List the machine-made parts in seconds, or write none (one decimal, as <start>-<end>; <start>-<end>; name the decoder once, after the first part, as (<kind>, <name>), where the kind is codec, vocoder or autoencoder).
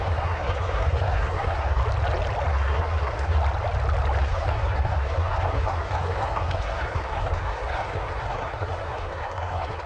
0.0-1.8 (codec, SNAC); 2.5-3.4; 4.2-9.9